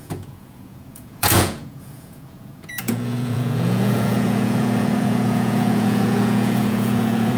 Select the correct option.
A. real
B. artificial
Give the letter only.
B